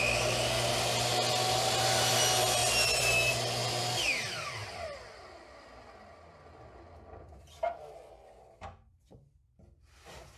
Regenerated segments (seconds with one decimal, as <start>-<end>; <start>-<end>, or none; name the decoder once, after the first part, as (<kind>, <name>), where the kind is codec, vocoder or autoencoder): none